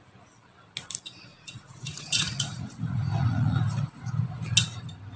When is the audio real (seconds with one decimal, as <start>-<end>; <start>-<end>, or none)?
0.0-1.3; 4.4-5.2